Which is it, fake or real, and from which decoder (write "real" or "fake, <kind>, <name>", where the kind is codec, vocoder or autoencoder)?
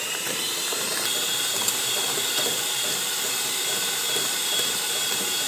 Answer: fake, vocoder, BigVGAN v2